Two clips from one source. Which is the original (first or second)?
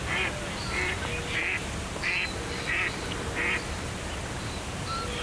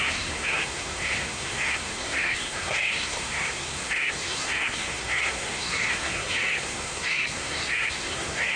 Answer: first